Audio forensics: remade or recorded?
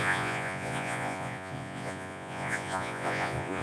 remade